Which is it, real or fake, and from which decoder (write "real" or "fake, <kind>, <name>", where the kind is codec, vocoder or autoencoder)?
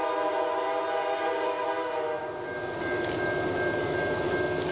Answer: real